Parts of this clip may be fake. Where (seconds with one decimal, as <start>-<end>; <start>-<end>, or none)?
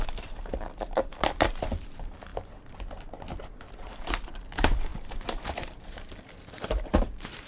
0.0-2.3; 3.8-7.5